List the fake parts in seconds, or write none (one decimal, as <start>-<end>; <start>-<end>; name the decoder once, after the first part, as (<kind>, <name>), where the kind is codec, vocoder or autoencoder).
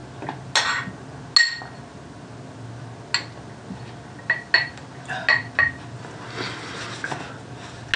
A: none